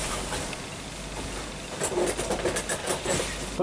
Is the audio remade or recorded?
recorded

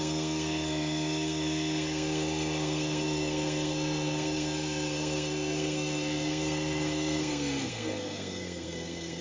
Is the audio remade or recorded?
remade